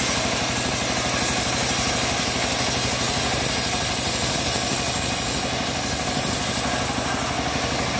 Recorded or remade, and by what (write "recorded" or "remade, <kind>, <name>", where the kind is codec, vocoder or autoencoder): recorded